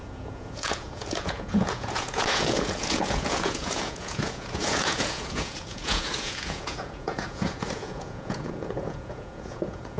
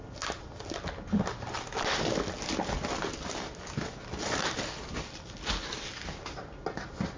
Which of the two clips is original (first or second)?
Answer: second